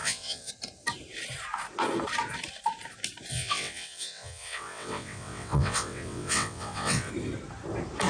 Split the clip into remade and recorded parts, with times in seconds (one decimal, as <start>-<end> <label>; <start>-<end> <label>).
0.0-0.5 remade; 0.5-3.3 recorded; 3.3-7.1 remade; 7.1-8.1 recorded